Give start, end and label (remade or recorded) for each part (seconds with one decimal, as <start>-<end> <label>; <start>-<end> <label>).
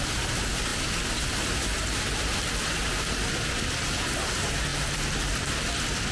0.0-6.1 recorded